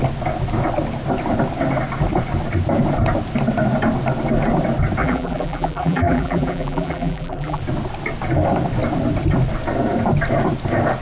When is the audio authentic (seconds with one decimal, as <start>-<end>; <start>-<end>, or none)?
0.0-5.0; 7.6-11.0